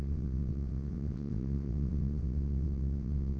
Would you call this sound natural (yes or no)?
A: no